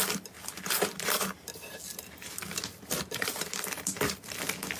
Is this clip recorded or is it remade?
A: recorded